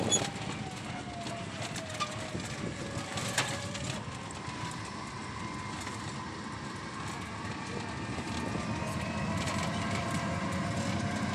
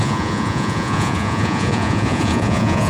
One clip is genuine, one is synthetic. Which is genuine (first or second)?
first